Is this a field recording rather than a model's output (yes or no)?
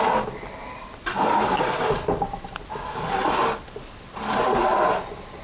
yes